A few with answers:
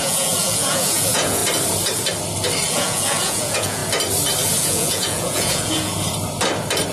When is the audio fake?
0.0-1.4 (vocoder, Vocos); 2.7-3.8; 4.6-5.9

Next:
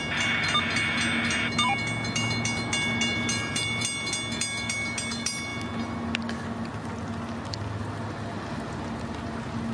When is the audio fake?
none

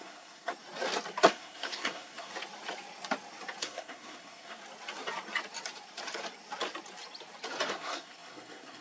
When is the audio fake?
0.0-0.5 (codec, SNAC); 1.3-2.3; 3.6-4.6; 7.7-8.8

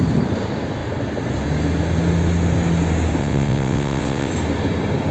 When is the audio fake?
3.2-4.3 (vocoder, WaveNeXt)

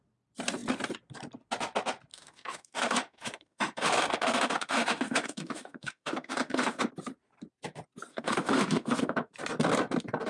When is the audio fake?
2.1-6.9 (autoencoder, DAC-VAE); 8.1-9.3